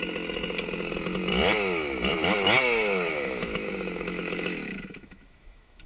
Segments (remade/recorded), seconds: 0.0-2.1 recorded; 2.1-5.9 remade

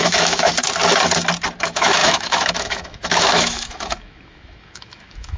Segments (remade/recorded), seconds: 0.0-0.5 remade; 0.5-1.6 recorded; 1.6-5.4 remade

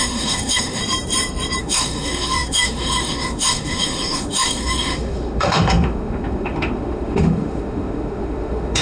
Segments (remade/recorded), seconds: 0.0-0.8 remade; 0.8-1.6 recorded; 1.6-8.8 remade